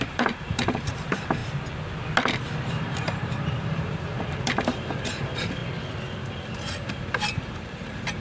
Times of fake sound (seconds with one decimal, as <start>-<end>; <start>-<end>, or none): 0.0-1.4; 2.7-5.6; 6.2-8.2